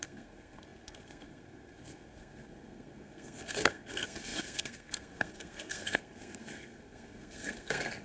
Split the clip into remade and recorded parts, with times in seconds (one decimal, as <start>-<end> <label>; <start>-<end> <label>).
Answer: 0.0-8.0 remade